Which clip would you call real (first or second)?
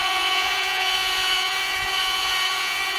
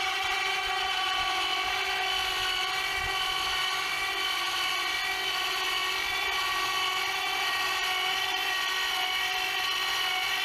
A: second